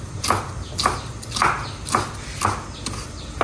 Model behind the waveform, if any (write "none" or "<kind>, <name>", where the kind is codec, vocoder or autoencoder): none